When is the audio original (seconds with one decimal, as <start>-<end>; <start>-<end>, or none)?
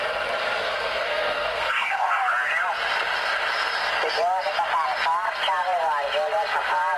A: 0.0-0.6; 2.3-7.0